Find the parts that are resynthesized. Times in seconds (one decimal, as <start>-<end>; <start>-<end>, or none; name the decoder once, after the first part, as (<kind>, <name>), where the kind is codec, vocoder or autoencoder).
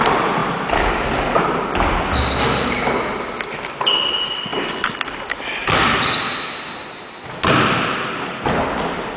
0.4-0.9 (vocoder, BigVGAN v2); 4.5-8.5